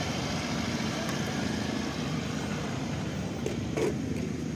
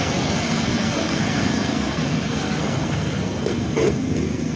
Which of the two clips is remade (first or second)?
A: second